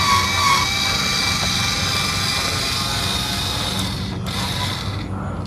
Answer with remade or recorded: recorded